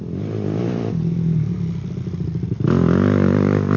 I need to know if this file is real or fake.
real